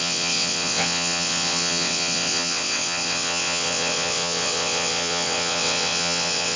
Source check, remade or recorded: remade